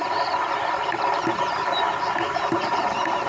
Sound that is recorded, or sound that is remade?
remade